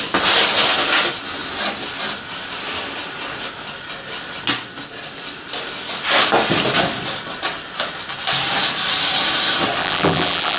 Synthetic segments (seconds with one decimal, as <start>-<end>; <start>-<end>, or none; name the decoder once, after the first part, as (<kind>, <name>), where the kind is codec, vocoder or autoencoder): 9.8-10.6 (vocoder, BigVGAN v2)